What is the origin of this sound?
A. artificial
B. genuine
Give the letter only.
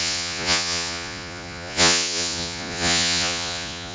A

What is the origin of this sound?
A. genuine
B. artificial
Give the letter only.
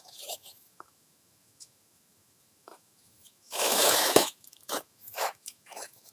B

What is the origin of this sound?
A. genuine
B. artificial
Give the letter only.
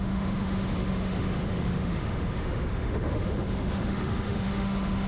B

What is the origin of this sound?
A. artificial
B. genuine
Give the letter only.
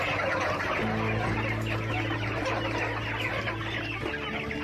B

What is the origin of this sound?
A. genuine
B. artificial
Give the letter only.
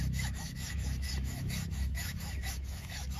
B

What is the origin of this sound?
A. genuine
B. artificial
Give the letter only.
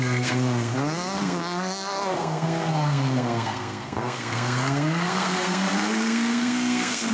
B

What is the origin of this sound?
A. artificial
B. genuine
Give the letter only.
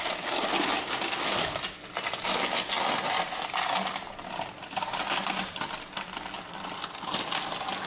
B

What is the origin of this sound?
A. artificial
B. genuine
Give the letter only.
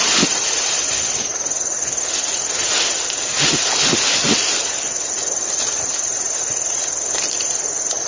B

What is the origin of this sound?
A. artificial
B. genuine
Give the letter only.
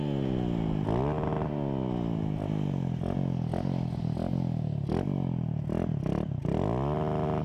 B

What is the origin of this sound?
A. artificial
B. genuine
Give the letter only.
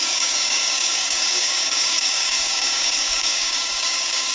A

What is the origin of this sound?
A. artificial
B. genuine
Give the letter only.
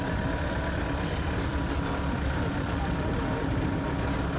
B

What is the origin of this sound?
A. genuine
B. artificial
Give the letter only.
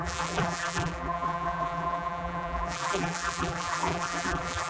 B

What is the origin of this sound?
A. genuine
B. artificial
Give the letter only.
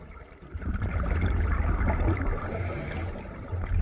A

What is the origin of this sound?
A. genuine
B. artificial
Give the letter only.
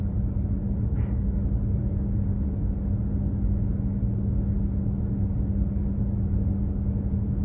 A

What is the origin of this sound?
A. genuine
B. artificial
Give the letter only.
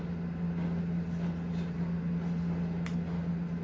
A